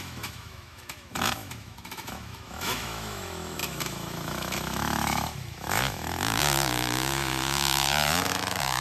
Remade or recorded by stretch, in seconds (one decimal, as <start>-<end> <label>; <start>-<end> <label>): 0.0-8.8 remade